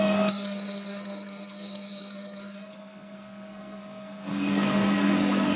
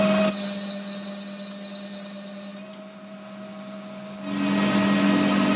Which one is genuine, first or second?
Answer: second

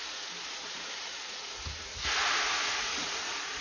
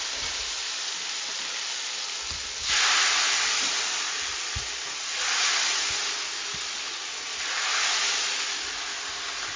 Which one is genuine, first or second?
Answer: second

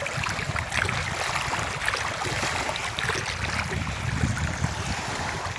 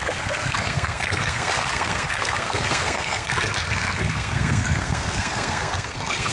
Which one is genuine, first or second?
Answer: first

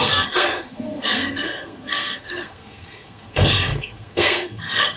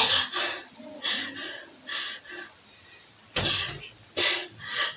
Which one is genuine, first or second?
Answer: second